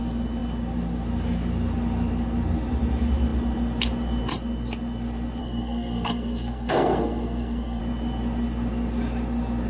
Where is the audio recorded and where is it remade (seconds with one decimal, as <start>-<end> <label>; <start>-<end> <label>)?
0.0-5.4 recorded; 5.4-7.8 remade; 7.8-9.7 recorded